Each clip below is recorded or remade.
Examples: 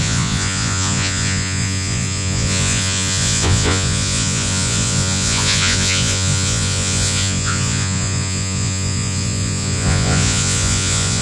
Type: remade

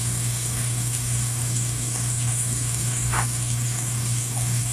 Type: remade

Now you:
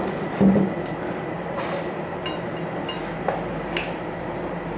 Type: recorded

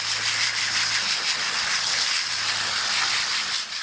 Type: recorded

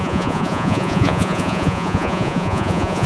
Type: remade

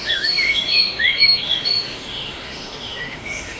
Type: remade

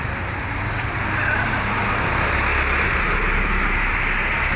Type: recorded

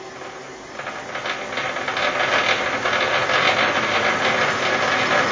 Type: recorded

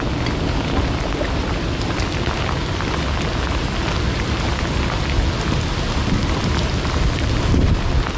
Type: recorded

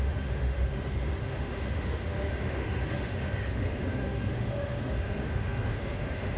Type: remade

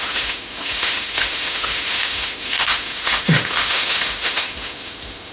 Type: remade